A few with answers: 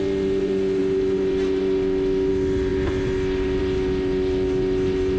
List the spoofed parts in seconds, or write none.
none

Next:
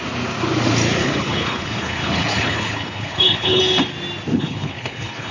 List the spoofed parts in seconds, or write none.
1.0-3.6 (codec, HILCodec); 4.3-5.3

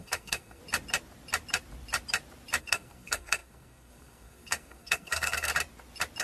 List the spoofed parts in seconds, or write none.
0.0-0.6 (codec, SNAC); 2.6-5.5

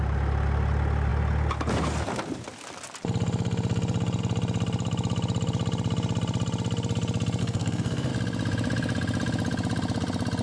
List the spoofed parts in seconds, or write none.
7.4-8.1 (codec, SNAC)

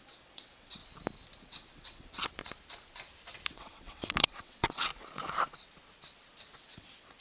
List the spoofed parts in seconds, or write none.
0.0-0.8 (vocoder, WaveNeXt); 1.4-2.2; 3.5-4.9; 6.6-7.2

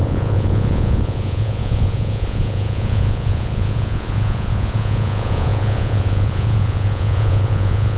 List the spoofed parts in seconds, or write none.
0.0-8.0 (vocoder, Vocos)

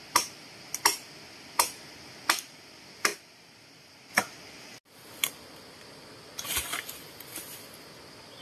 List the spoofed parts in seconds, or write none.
3.1-4.1 (vocoder, BigVGAN v2)

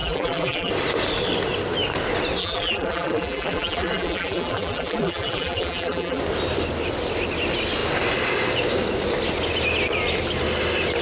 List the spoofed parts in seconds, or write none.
0.0-0.7 (vocoder, BigVGAN v2); 2.4-6.2